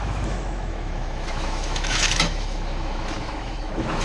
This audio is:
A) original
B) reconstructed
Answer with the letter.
B